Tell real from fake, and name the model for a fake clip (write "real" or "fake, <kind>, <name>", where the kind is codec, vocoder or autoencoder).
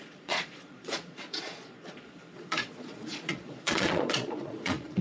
fake, vocoder, Vocos